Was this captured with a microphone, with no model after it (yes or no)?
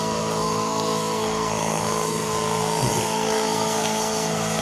no